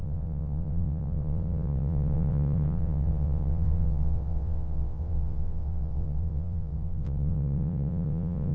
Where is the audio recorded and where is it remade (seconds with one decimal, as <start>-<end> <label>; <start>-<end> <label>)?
0.0-8.5 remade